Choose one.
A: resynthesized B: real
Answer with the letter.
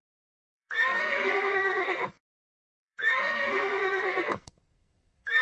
A